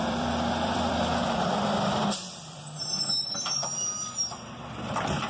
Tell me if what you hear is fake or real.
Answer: fake